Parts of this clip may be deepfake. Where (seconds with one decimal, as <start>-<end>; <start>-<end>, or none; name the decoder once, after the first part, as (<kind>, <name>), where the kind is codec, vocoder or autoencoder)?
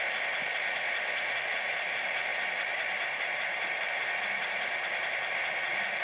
0.0-6.0 (vocoder, BigVGAN v2)